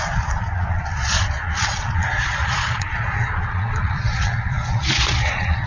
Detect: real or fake fake